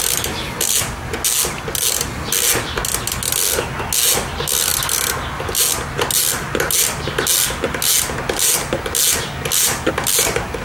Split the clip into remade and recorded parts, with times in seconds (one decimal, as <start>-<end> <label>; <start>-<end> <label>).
0.0-10.6 recorded